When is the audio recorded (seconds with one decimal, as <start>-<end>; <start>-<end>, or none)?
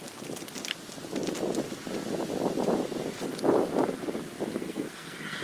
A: 0.0-4.5